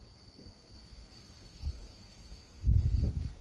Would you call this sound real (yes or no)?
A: no